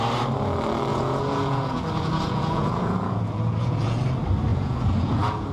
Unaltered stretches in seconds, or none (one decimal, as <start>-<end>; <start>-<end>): 0.0-0.9; 4.0-4.5